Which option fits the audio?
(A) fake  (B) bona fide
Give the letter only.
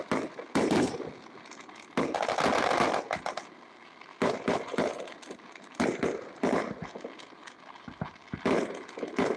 B